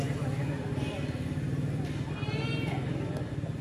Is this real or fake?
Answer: real